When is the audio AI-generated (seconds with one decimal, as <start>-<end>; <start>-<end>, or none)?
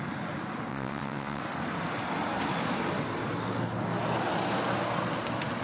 0.7-1.4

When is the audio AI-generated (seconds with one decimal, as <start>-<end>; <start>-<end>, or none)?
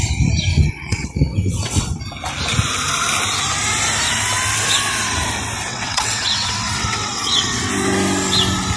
0.5-2.0; 5.7-7.7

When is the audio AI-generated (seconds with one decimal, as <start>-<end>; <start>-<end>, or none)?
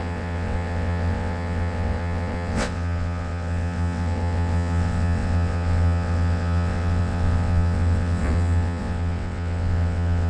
0.0-10.3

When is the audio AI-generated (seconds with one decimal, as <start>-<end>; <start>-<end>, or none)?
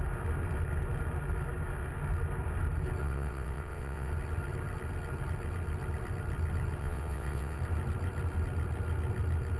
3.0-4.1; 6.8-7.6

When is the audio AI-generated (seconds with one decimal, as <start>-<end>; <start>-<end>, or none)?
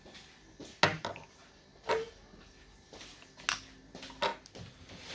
none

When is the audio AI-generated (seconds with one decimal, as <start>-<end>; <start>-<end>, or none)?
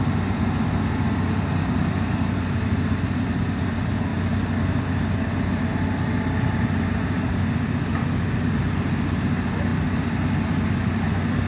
none